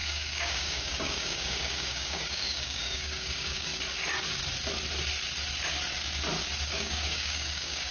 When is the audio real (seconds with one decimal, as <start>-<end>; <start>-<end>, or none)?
3.7-6.7

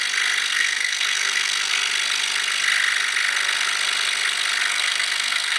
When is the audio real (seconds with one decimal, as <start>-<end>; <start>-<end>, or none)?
0.0-0.5; 1.7-4.7

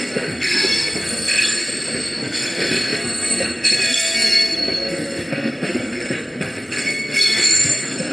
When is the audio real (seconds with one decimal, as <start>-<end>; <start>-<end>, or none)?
1.6-2.2

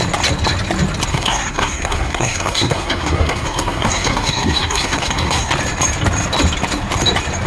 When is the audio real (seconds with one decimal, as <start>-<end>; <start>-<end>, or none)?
0.0-1.1; 5.5-7.5

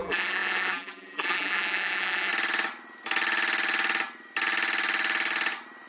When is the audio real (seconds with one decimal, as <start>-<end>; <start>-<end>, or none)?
2.3-5.9

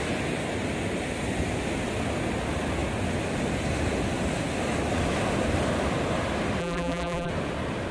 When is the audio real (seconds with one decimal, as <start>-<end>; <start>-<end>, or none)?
0.0-6.6; 7.3-7.9

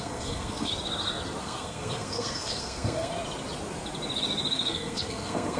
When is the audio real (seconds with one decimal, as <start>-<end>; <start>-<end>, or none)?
0.7-1.4; 3.1-4.5

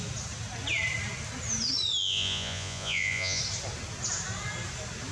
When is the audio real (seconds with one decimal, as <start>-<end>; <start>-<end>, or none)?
0.0-2.0; 3.4-5.1